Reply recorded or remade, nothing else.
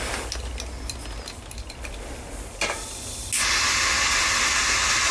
recorded